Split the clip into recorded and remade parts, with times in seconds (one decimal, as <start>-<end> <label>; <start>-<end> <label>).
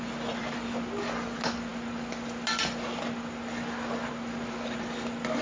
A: 0.0-5.4 recorded